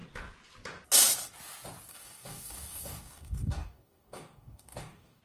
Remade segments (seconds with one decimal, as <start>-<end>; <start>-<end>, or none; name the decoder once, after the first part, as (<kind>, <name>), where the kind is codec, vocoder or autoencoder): 1.9-5.2 (codec, DAC)